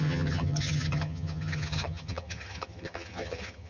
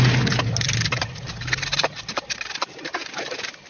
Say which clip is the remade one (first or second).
first